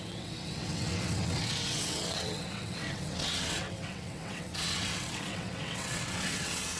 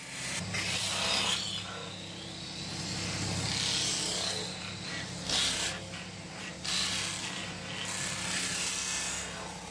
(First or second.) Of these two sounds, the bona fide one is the second